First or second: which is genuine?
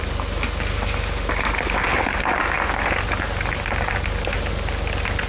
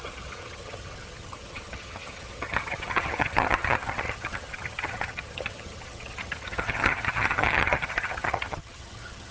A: first